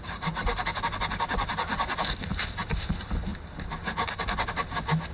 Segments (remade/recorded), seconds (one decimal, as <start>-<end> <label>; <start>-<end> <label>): 0.0-5.1 recorded